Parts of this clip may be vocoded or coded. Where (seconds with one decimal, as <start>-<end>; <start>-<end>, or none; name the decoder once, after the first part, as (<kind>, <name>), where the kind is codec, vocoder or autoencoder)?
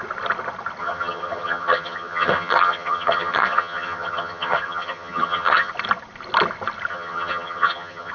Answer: 0.8-5.7 (vocoder, HiFi-GAN); 6.9-8.1